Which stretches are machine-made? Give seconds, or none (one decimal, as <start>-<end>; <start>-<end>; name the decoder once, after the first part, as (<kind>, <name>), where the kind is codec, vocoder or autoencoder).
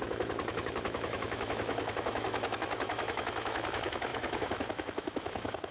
0.0-5.7 (autoencoder, DAC-VAE)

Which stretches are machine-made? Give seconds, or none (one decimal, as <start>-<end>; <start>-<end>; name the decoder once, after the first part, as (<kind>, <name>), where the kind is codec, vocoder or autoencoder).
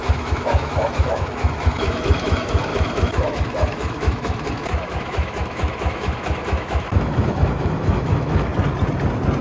0.0-8.5 (autoencoder, DAC-VAE)